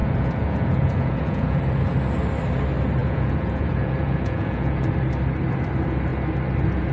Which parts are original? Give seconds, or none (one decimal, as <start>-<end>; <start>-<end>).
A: 1.6-3.0; 4.9-6.9